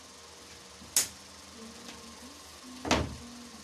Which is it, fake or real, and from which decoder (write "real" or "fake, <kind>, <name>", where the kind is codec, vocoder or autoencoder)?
real